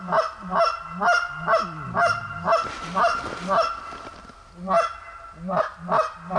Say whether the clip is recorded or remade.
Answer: recorded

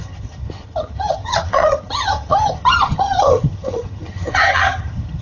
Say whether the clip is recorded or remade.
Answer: remade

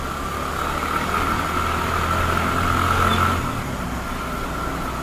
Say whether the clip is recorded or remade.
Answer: recorded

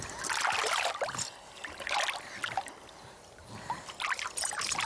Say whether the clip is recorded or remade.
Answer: recorded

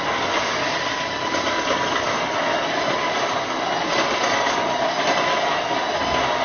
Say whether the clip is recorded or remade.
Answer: recorded